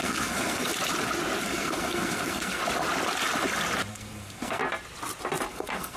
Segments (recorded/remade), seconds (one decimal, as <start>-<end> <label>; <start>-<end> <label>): 0.0-0.7 remade; 0.7-1.4 recorded; 1.4-2.6 remade; 2.6-3.9 recorded; 3.9-4.6 remade; 4.6-5.5 recorded; 5.5-6.0 remade